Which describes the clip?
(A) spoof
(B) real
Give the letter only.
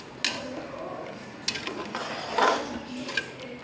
B